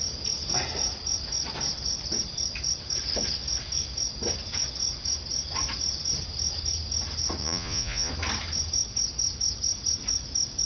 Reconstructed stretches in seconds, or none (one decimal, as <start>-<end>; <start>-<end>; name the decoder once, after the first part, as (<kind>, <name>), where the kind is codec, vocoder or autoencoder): 7.4-8.1 (vocoder, Vocos)